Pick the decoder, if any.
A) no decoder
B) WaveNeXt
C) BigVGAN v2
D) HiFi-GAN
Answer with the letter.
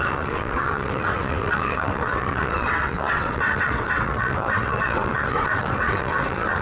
B